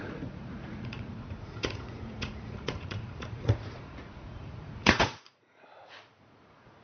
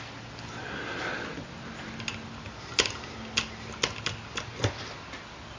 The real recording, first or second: second